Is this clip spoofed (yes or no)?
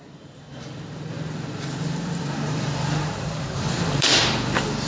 yes